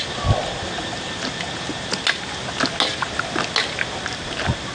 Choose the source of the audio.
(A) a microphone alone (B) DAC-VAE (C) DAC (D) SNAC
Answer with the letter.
A